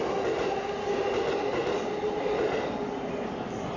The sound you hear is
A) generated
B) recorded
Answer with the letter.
B